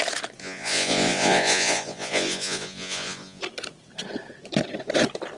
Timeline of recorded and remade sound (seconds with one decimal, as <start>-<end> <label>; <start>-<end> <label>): 0.0-0.4 recorded; 0.4-3.4 remade; 3.4-5.4 recorded